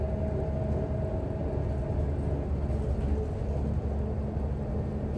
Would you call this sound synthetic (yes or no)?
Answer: no